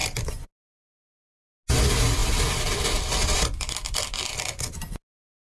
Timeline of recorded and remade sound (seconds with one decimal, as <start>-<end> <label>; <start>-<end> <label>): 0.0-5.4 recorded